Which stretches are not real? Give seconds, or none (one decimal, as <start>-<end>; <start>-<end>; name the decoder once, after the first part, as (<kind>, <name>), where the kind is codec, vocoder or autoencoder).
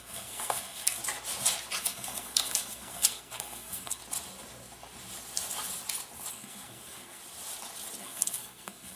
0.0-1.0 (codec, SNAC); 1.8-4.0; 6.3-7.2; 8.0-9.0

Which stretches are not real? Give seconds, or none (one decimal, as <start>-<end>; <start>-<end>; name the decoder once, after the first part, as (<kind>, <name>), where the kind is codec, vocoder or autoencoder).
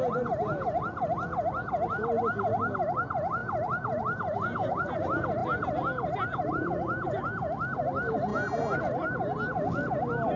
3.4-4.9 (vocoder, BigVGAN v2); 8.3-8.8